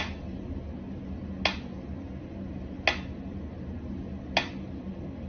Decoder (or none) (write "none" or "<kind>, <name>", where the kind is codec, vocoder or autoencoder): none